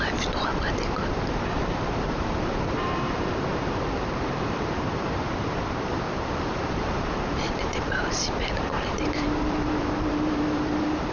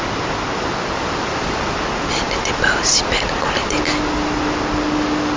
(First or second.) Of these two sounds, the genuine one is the second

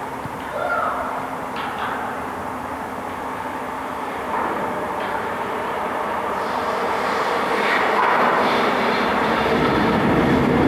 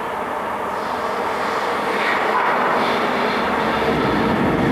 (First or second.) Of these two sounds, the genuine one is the second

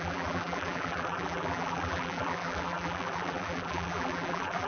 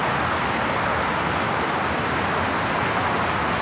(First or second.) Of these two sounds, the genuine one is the second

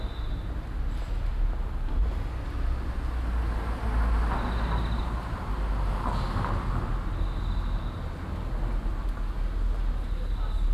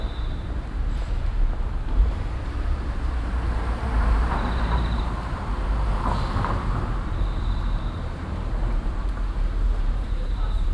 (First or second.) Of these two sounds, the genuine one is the first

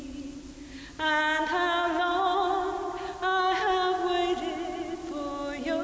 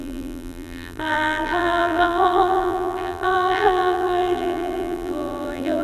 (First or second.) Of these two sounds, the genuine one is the first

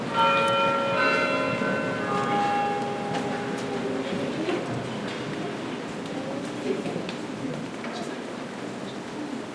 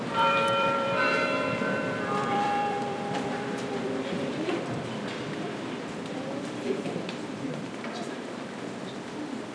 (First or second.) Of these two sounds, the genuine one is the first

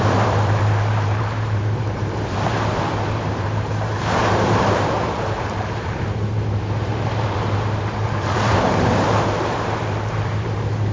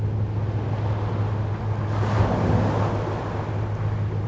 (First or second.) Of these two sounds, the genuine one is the second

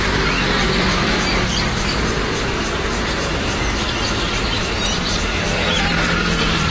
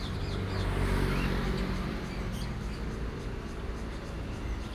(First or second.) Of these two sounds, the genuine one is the second